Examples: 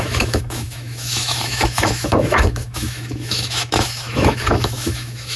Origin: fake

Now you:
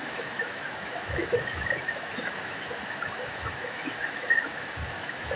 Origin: fake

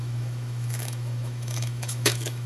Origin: fake